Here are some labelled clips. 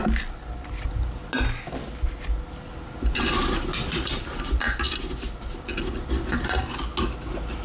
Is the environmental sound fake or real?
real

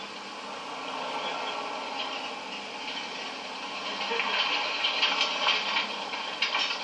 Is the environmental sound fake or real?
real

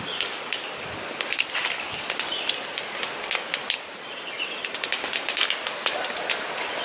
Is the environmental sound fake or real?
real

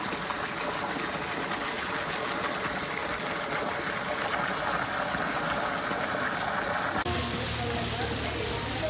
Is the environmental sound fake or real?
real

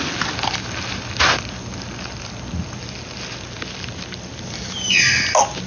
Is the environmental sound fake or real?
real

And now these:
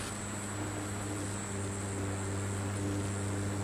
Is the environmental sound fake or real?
real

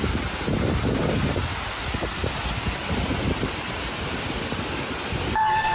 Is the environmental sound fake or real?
fake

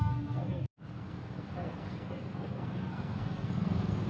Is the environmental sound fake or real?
fake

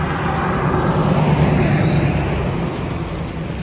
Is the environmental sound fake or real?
real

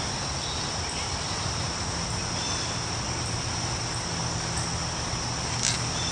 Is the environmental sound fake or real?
real